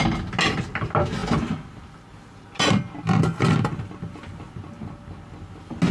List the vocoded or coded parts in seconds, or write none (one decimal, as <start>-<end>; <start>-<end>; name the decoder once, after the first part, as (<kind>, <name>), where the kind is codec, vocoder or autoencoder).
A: none